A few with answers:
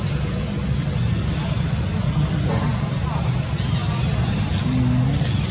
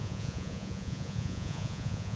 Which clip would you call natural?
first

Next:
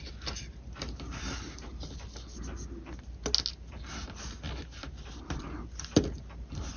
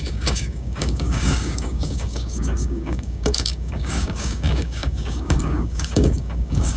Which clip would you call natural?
first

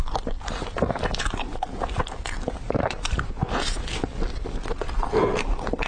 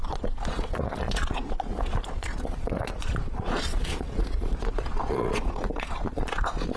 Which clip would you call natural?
first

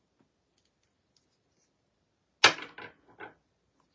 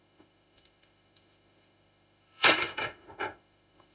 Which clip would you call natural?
first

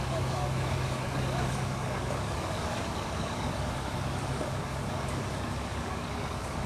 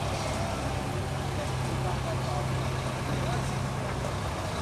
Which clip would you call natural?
second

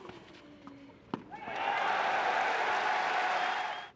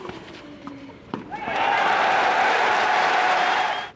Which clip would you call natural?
first